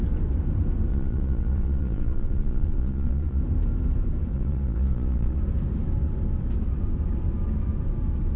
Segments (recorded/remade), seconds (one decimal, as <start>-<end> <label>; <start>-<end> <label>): 0.0-0.9 recorded; 0.9-3.4 remade; 3.4-4.3 recorded; 4.3-5.4 remade; 5.4-8.4 recorded